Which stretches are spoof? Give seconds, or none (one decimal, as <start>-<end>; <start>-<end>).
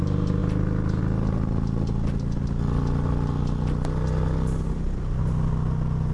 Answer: none